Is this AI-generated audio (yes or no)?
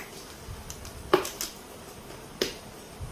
no